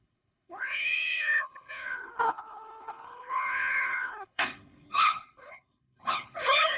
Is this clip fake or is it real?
fake